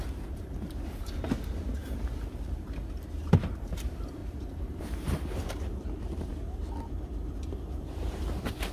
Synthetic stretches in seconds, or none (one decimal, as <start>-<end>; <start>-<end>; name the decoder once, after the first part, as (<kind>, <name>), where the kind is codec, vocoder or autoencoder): 0.0-4.2 (vocoder, BigVGAN v2); 4.8-6.3; 7.5-8.7